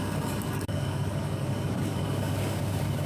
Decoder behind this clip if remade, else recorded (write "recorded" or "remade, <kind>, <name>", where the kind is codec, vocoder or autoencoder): remade, codec, DAC